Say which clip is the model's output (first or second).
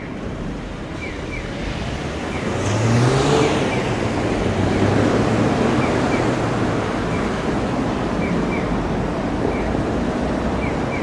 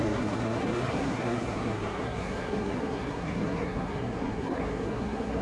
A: second